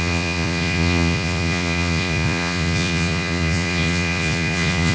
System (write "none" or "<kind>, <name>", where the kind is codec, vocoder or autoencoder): vocoder, Vocos